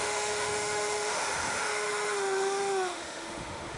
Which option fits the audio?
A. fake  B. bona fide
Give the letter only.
A